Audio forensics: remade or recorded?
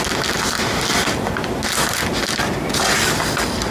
recorded